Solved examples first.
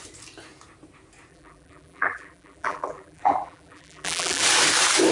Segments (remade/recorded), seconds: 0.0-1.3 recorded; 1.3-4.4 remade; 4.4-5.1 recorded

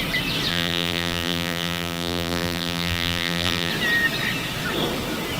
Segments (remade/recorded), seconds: 0.0-0.5 recorded; 0.5-3.7 remade; 3.7-5.4 recorded

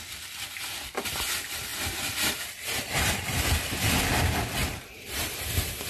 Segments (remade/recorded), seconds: 0.0-1.7 recorded; 1.7-3.4 remade; 3.4-4.6 recorded; 4.6-5.2 remade; 5.2-5.9 recorded

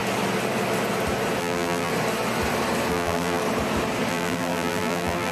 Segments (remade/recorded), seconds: 0.0-1.4 recorded; 1.4-1.9 remade; 1.9-2.9 recorded; 2.9-3.4 remade; 3.4-4.1 recorded; 4.1-5.3 remade